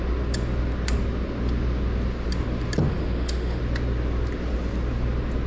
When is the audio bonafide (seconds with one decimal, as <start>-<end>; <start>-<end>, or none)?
0.0-2.9; 3.6-5.5